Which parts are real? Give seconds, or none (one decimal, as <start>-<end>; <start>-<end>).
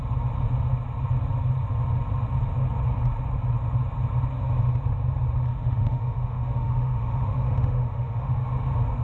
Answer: 0.0-5.5; 8.3-9.0